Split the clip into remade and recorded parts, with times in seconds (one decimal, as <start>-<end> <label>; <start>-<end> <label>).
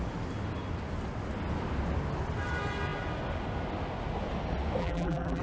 0.0-4.8 recorded; 4.8-5.4 remade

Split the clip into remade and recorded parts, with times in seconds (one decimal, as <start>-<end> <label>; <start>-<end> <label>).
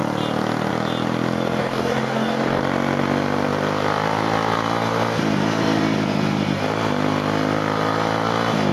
0.0-1.6 recorded; 1.6-2.6 remade; 2.6-8.7 recorded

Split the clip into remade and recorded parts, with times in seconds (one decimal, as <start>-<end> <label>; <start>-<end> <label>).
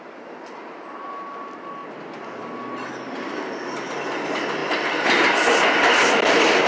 0.0-6.7 recorded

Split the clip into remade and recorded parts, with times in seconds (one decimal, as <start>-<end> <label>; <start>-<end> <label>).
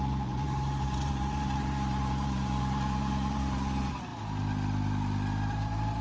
0.0-4.1 remade; 4.1-5.5 recorded; 5.5-6.0 remade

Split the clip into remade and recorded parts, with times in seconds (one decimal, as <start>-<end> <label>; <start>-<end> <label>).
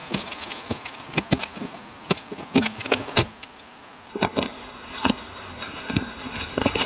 0.0-4.1 recorded; 4.1-6.9 remade